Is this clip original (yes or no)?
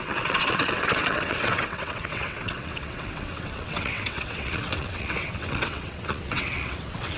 no